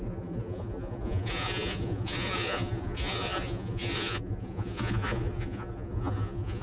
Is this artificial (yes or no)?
yes